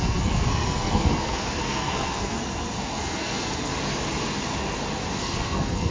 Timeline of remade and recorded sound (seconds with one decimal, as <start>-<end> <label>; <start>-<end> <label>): 0.0-3.7 remade; 3.7-5.2 recorded; 5.2-5.9 remade

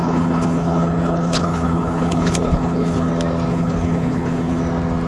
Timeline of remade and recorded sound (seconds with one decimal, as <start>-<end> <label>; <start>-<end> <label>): 0.0-3.1 remade; 3.1-3.5 recorded; 3.5-4.6 remade; 4.6-5.1 recorded